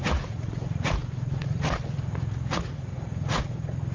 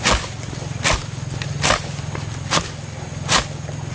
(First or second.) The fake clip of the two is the first